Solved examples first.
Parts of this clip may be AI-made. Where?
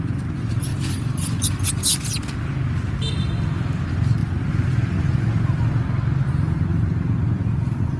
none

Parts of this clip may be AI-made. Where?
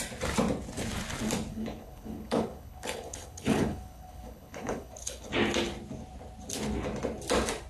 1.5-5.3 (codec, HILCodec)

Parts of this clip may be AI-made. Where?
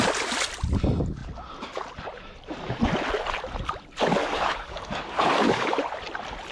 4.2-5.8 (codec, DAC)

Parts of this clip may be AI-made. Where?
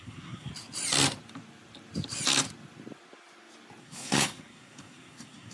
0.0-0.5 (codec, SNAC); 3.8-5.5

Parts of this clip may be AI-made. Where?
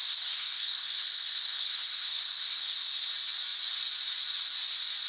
0.0-3.1 (codec, SNAC)